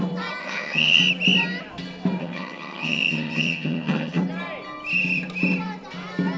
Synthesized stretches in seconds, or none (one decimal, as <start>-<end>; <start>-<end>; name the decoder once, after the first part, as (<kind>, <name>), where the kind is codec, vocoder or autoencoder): 0.4-1.0 (vocoder, HiFi-GAN); 2.2-4.2